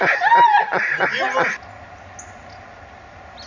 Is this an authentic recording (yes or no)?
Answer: yes